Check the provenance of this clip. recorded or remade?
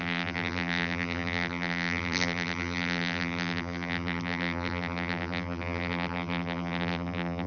remade